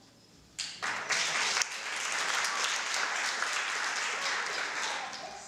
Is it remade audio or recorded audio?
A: recorded